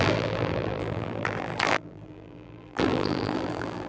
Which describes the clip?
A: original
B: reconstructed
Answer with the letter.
B